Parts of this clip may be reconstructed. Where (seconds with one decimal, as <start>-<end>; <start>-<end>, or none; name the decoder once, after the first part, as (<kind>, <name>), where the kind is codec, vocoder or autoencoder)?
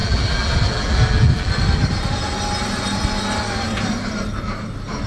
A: 0.0-1.5 (vocoder, BigVGAN v2)